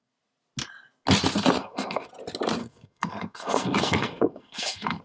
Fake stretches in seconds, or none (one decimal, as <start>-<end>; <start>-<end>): 1.6-2.1; 2.6-5.0